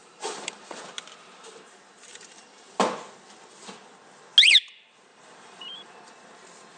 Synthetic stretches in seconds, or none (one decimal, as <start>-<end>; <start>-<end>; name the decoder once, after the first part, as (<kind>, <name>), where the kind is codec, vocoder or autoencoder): 0.0-0.8 (vocoder, BigVGAN v2); 2.1-2.8; 5.1-6.1